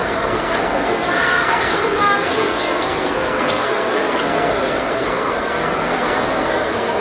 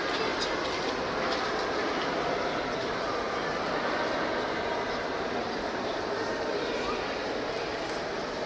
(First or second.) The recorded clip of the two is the second